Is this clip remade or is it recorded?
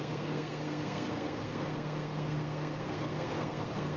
remade